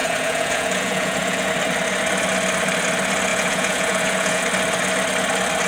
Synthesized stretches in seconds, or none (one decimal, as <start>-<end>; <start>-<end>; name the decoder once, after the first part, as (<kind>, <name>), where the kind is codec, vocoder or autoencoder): 0.0-1.5 (vocoder, Vocos); 3.3-4.4